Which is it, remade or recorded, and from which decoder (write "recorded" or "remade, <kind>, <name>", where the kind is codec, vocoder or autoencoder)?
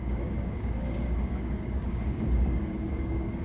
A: remade, codec, DAC